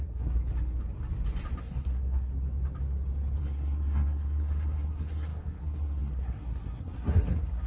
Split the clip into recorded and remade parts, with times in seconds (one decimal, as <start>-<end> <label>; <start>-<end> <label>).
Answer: 0.0-0.4 remade; 0.4-1.6 recorded; 1.6-2.3 remade; 2.3-3.4 recorded; 3.4-7.7 remade